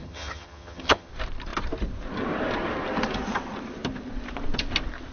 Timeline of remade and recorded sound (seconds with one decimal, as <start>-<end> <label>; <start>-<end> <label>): 0.0-1.1 remade; 1.1-5.1 recorded